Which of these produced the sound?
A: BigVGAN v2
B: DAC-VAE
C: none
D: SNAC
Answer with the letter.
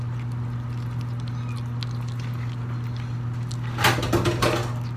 C